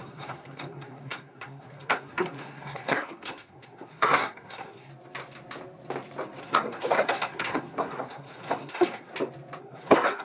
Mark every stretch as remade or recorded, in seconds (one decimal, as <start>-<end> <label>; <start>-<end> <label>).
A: 0.0-4.9 remade; 4.9-6.4 recorded; 6.4-9.1 remade; 9.1-9.6 recorded; 9.6-10.2 remade